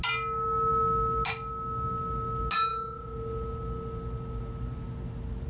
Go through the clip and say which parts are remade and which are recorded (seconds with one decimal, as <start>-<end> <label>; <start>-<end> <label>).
0.0-5.5 recorded